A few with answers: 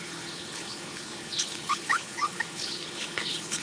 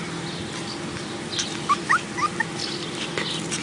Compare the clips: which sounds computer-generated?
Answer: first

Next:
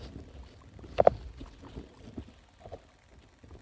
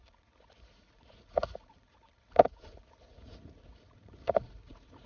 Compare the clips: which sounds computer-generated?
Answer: second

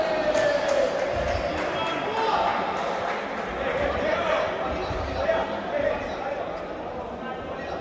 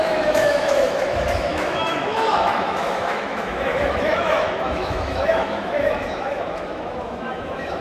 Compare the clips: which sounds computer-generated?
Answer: second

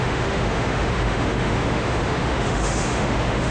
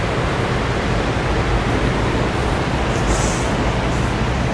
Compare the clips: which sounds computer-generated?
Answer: first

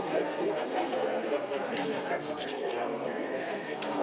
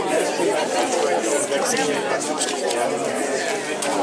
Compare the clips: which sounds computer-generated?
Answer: first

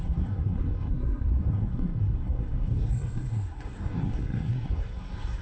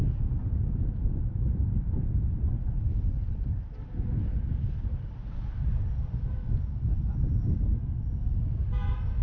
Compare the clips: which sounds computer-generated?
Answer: first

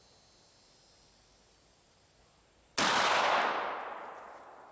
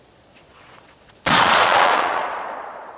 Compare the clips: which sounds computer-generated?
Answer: second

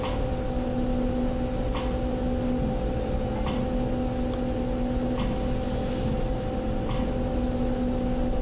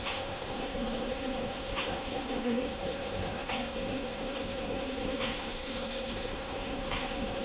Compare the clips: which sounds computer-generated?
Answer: second